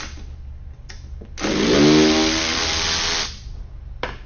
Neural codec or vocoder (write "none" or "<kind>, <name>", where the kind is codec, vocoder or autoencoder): none